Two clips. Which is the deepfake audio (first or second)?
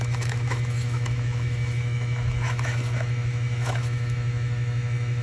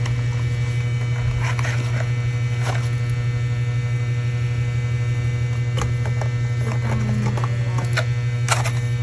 first